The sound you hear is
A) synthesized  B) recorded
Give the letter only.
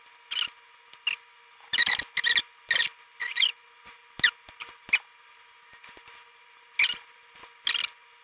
B